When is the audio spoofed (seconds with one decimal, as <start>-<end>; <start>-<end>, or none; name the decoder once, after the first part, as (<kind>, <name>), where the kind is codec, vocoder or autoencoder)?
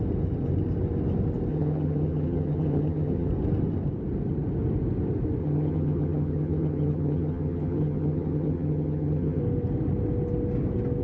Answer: 1.5-3.3 (vocoder, HiFi-GAN); 5.4-9.4